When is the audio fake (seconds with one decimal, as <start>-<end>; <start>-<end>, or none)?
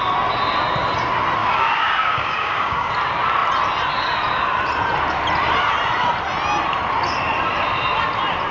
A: 1.4-2.9